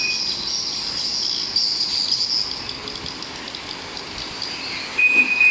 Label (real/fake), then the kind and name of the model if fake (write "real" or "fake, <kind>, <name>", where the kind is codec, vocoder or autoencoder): real